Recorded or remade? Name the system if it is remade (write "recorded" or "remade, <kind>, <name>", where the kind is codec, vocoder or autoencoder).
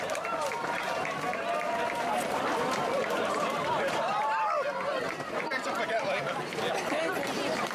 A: recorded